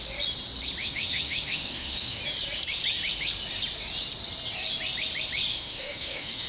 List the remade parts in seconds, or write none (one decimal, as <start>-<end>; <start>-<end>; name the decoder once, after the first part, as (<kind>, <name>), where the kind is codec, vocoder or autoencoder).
0.8-2.2 (autoencoder, DAC-VAE); 5.5-6.5